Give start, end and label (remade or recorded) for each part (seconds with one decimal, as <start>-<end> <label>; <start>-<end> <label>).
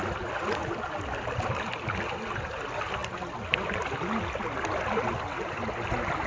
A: 0.0-6.3 recorded